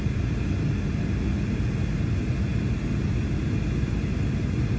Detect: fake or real real